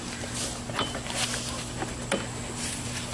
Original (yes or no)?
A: yes